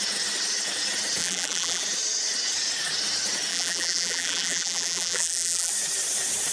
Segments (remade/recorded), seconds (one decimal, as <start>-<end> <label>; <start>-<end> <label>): 0.0-1.2 recorded; 1.2-1.8 remade; 1.8-3.5 recorded; 3.5-5.7 remade; 5.7-6.5 recorded